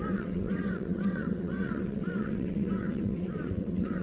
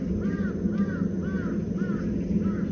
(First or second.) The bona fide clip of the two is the second